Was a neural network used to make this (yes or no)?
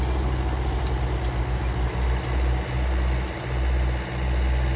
no